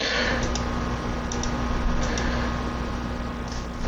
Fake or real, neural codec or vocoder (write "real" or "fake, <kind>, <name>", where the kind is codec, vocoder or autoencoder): real